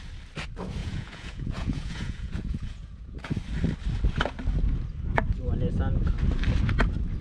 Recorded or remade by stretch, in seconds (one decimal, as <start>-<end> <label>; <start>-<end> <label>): 0.0-0.8 recorded; 0.8-3.3 remade; 3.3-7.2 recorded